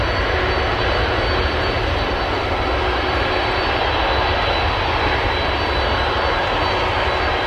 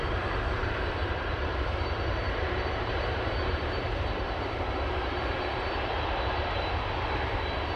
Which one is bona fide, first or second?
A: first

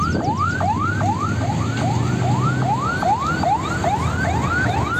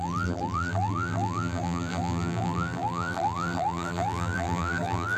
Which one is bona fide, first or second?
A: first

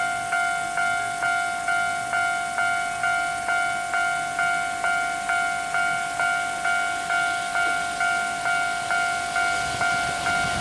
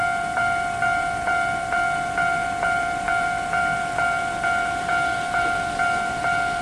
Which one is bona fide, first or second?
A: first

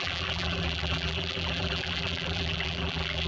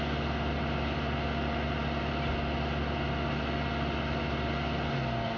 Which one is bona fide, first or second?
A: second